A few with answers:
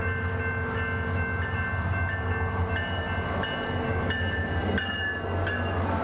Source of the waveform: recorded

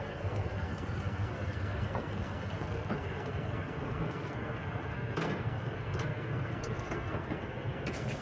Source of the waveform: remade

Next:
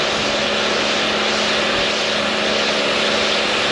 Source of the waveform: recorded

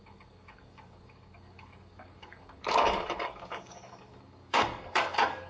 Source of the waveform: remade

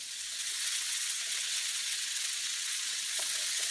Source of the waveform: remade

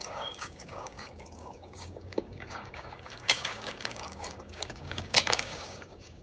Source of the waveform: remade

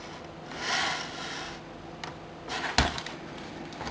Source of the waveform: recorded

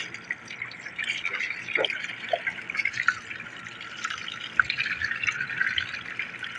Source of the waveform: recorded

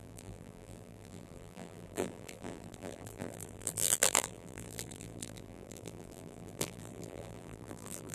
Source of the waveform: remade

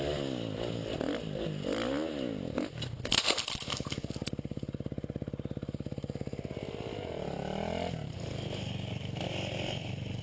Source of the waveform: recorded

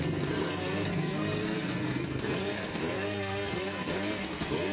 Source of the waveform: remade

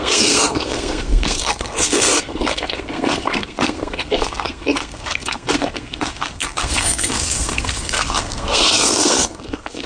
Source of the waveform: remade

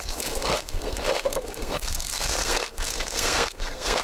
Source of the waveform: remade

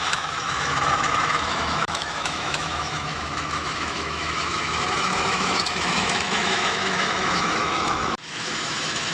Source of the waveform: remade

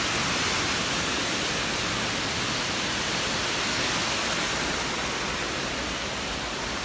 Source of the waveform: recorded